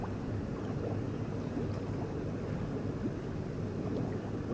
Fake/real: real